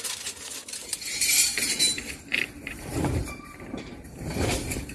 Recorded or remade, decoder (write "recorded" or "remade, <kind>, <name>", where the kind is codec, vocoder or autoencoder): remade, vocoder, BigVGAN v2